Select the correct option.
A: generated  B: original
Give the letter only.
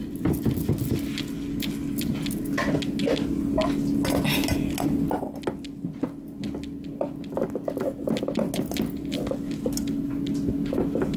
B